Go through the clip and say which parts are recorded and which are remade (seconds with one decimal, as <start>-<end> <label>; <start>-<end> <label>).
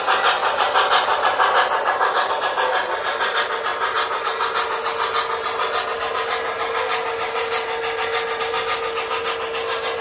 0.0-10.0 recorded